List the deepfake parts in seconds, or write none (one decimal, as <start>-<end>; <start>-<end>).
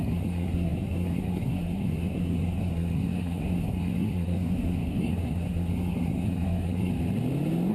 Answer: 0.0-6.9